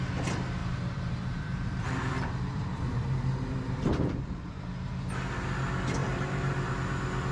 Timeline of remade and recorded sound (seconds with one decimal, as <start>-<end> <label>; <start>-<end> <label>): 0.0-0.6 recorded; 0.6-4.6 remade; 4.6-6.0 recorded; 6.0-6.7 remade; 6.7-7.3 recorded